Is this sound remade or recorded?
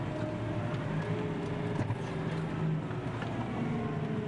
recorded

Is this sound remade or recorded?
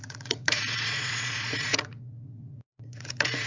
remade